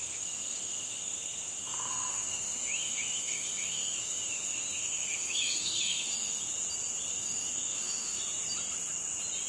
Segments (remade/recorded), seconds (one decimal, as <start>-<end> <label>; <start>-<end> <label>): 0.0-6.4 remade; 6.4-7.1 recorded; 7.1-8.2 remade; 8.2-9.5 recorded